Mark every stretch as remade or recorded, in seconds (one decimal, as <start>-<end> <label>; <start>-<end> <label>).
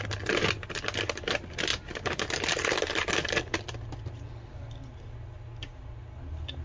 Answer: 0.0-1.7 recorded; 1.7-3.4 remade; 3.4-6.6 recorded